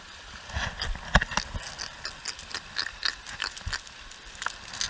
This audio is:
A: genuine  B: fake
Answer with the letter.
A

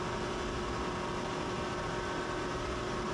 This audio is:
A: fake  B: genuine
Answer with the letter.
B